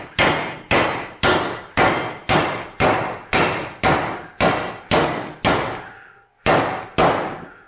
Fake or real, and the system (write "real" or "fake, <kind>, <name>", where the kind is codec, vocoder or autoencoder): real